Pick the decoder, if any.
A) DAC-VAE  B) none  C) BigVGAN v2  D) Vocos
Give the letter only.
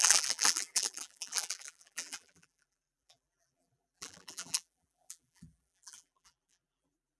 C